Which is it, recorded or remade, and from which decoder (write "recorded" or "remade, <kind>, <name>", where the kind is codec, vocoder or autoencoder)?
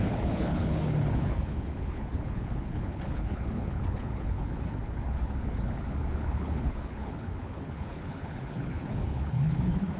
remade, codec, HILCodec